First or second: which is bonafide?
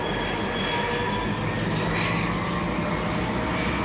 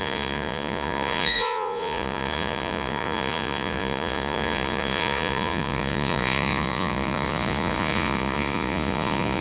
first